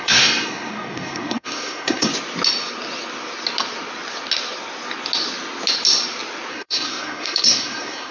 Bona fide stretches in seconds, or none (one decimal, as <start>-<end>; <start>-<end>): 2.1-6.5